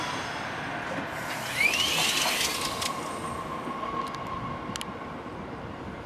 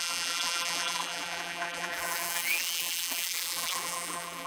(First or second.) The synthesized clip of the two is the second